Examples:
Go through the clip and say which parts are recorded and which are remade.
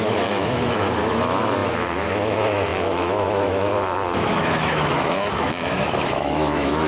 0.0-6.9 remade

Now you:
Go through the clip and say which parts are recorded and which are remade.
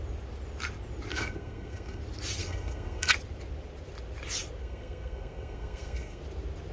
0.0-1.1 recorded; 1.1-2.0 remade; 2.0-2.4 recorded; 2.4-3.1 remade; 3.1-4.6 recorded; 4.6-6.2 remade; 6.2-6.7 recorded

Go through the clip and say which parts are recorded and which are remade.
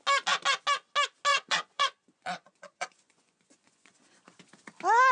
0.0-1.3 recorded; 1.3-4.4 remade; 4.4-5.1 recorded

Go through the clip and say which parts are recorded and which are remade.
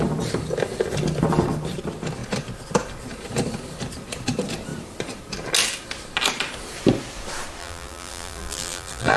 0.0-7.6 recorded; 7.6-9.2 remade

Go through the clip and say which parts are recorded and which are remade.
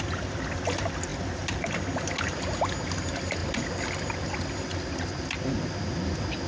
0.0-6.5 recorded